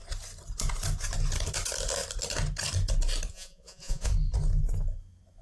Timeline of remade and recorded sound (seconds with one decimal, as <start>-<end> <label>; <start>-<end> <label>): 0.0-3.3 recorded; 3.3-4.1 remade; 4.1-5.4 recorded